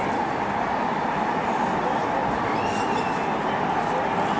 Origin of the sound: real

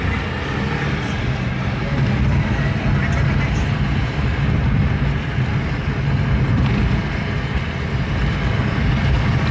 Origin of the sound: real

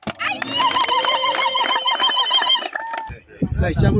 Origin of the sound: real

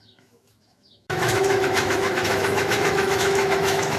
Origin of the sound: fake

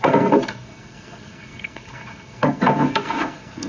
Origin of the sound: fake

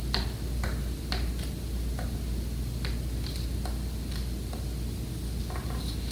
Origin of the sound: real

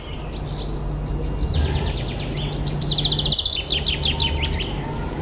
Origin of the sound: real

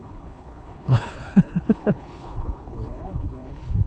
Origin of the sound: fake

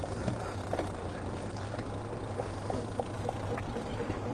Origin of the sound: real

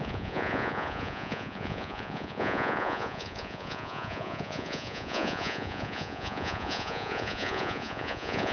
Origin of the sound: fake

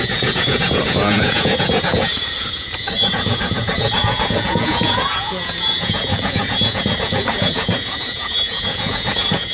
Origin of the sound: fake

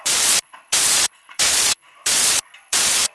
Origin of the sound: fake